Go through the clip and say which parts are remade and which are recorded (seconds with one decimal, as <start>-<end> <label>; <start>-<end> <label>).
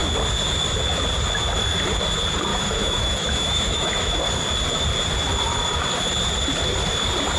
0.0-2.5 recorded; 2.5-4.2 remade; 4.2-7.4 recorded